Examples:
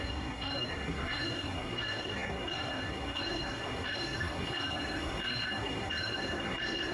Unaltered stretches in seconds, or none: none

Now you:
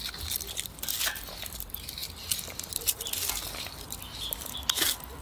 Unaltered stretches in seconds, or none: 0.0-5.2

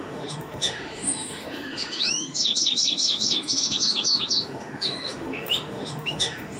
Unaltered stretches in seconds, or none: none

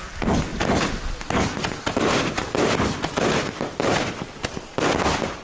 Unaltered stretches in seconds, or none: 0.0-5.4